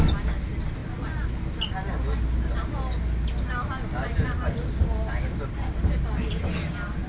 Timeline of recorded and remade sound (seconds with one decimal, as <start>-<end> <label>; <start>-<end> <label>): 0.0-7.1 recorded